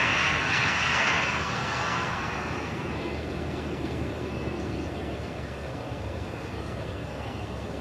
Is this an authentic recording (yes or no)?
no